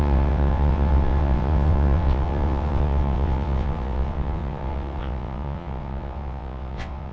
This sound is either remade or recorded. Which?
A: remade